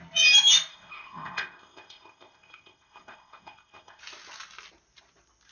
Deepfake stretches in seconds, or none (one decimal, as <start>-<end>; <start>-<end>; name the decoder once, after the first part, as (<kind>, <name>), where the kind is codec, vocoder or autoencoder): 0.7-4.0 (codec, ZipCodec)

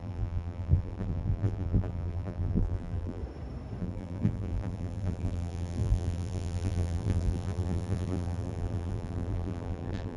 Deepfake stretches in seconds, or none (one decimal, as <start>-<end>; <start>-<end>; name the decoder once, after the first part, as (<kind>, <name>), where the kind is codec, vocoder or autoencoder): 0.0-3.2 (vocoder, BigVGAN v2); 3.8-10.2